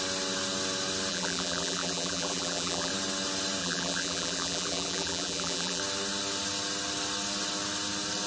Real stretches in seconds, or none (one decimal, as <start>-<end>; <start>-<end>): 0.0-1.1; 2.9-3.6; 5.8-8.3